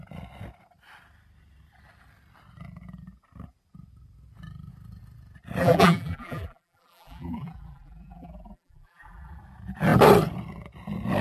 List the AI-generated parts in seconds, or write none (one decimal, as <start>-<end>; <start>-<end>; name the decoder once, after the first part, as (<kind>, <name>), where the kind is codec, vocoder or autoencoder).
5.6-9.4 (vocoder, BigVGAN v2)